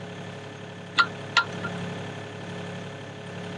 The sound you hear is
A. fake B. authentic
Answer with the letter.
B